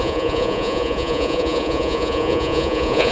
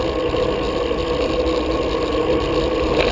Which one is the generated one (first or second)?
first